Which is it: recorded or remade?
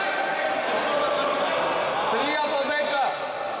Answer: recorded